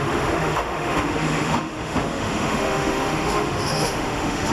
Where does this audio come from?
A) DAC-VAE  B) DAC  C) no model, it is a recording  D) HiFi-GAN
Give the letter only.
A